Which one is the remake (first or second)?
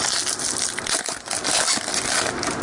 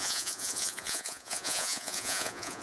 second